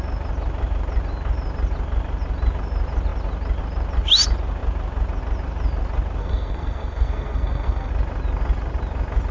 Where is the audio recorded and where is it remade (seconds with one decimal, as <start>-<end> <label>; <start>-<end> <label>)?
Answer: 0.0-6.2 recorded; 6.2-7.9 remade; 7.9-9.3 recorded